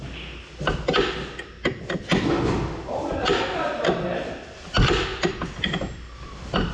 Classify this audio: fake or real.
real